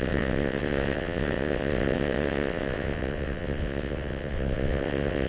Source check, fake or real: fake